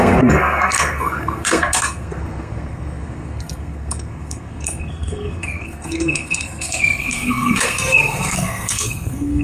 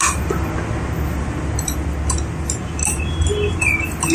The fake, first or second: first